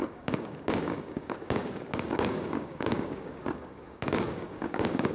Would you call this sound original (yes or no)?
no